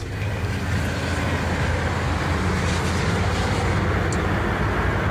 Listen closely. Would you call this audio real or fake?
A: real